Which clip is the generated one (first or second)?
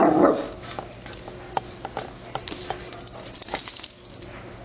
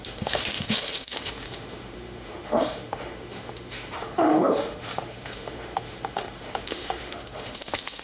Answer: second